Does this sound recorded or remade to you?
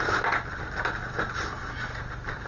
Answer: recorded